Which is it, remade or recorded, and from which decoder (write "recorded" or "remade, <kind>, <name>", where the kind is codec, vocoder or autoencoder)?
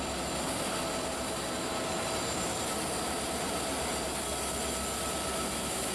recorded